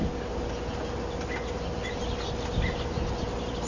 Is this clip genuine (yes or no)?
yes